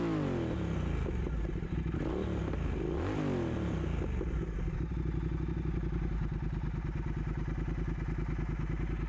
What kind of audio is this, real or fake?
real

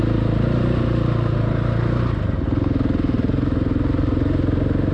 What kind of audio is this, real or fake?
real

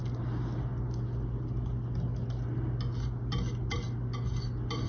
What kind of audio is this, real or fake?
real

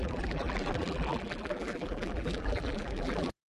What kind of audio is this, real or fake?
fake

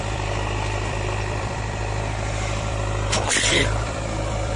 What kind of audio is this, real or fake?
fake